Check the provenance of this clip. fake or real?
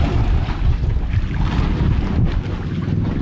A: real